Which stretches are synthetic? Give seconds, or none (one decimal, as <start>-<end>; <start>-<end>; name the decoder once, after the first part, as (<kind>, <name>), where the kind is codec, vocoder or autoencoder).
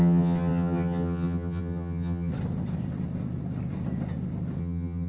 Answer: 0.0-2.3 (vocoder, HiFi-GAN); 4.6-5.1